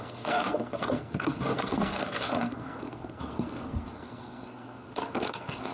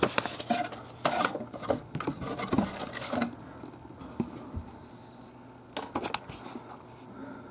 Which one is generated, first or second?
first